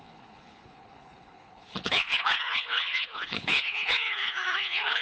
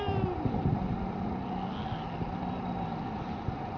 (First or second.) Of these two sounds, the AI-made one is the first